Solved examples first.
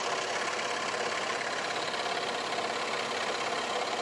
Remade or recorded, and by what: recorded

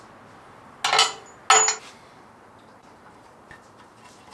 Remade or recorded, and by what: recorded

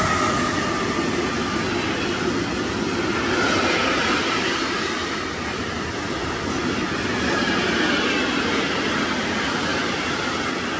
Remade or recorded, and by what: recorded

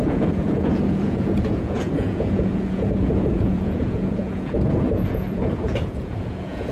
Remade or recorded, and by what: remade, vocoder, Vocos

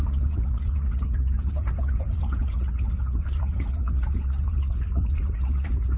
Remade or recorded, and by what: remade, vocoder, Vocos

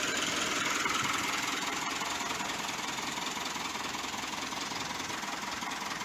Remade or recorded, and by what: recorded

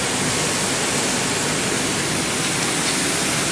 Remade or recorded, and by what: recorded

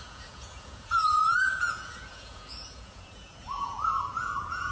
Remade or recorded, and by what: remade, vocoder, Vocos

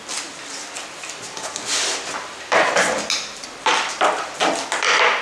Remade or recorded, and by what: recorded